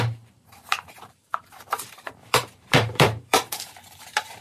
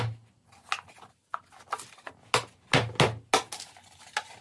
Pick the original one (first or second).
second